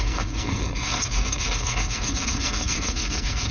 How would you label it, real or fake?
fake